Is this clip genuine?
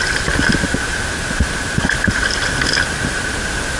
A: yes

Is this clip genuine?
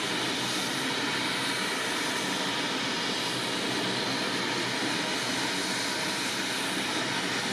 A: yes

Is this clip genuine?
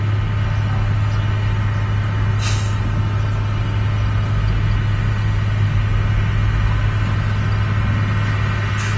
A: yes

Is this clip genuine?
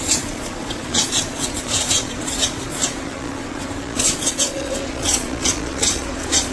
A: no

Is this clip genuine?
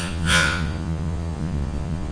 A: no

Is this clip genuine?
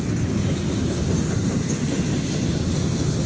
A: yes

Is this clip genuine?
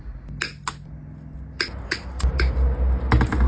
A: yes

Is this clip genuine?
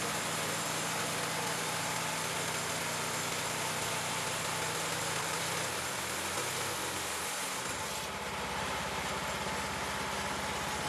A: yes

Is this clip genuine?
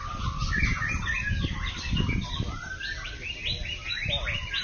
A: yes